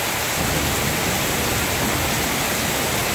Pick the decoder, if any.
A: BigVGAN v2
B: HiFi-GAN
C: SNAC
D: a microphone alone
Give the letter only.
A